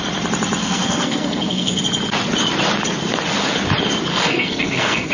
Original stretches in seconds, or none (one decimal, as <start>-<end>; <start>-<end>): 0.0-0.6; 1.8-4.1